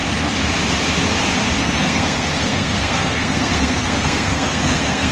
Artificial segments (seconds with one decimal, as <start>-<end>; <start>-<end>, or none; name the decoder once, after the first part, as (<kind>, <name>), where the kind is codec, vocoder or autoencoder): 1.6-5.1 (codec, SNAC)